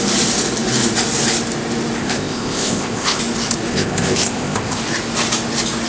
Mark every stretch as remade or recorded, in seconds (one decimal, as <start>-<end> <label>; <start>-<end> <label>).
0.0-2.0 recorded; 2.0-3.2 remade; 3.2-3.7 recorded; 3.7-4.8 remade; 4.8-5.9 recorded